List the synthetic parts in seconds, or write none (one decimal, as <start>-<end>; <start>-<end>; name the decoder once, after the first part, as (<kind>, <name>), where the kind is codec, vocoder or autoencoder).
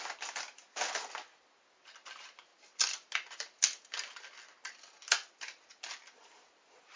none